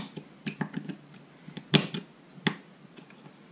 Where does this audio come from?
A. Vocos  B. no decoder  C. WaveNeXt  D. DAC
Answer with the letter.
B